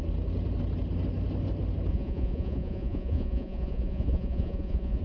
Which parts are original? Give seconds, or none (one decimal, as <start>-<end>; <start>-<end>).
0.0-1.9